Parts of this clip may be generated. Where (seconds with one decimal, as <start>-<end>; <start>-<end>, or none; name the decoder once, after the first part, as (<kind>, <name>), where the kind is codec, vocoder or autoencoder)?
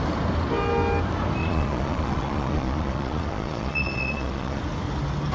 1.4-4.6 (vocoder, Vocos)